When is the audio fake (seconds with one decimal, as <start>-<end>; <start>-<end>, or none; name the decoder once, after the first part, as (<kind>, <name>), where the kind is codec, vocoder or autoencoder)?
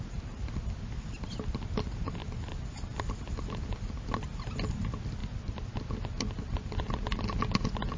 none